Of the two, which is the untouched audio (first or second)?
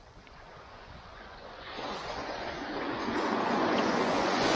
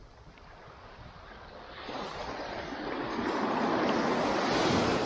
second